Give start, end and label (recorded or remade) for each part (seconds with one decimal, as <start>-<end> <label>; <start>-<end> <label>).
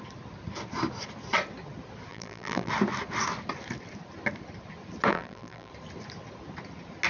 0.0-2.1 recorded; 2.1-2.7 remade; 2.7-5.1 recorded; 5.1-5.7 remade; 5.7-7.1 recorded